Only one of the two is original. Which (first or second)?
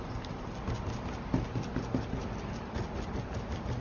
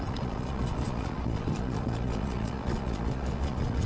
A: first